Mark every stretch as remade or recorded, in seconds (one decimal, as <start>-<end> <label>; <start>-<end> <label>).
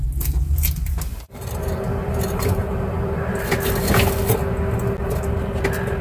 0.0-1.1 recorded; 1.1-3.4 remade; 3.4-6.0 recorded